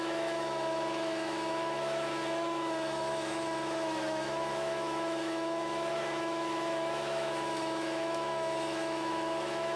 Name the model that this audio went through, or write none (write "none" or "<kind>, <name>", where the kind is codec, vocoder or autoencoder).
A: autoencoder, DAC-VAE